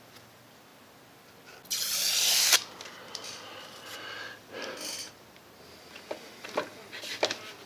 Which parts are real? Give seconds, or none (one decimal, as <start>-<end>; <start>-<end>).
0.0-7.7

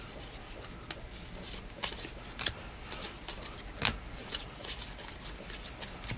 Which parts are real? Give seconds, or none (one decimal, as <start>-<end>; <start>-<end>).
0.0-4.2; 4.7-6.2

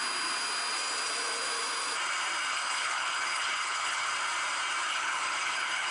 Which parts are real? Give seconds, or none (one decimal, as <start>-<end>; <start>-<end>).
0.0-2.5; 4.1-4.9

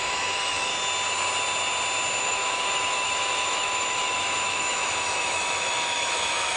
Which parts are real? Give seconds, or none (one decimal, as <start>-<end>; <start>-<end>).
0.7-2.2

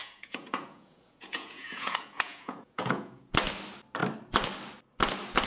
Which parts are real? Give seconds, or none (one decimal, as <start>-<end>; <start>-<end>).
3.3-5.5

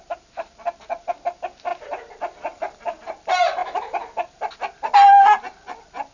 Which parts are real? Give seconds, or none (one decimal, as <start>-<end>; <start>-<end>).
0.0-1.7; 3.1-3.6; 4.5-6.1

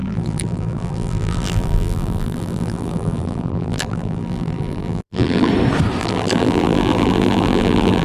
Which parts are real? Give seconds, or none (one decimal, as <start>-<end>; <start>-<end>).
5.5-6.0

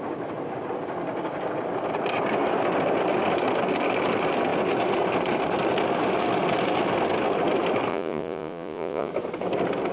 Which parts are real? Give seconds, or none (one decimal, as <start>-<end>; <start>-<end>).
0.0-7.9; 9.1-9.9